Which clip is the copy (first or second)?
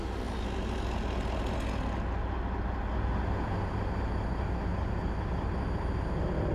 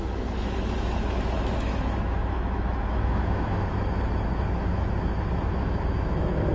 second